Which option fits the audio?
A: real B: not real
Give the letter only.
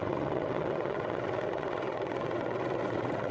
B